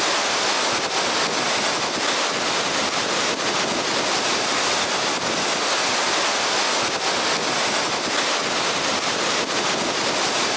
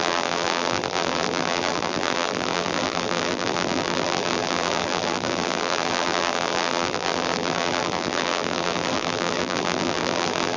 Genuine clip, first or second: first